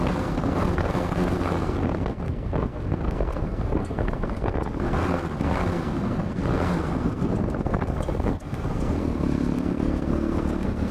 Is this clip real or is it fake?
fake